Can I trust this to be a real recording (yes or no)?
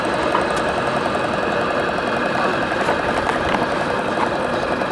yes